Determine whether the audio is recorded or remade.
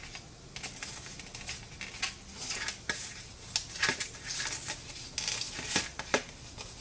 recorded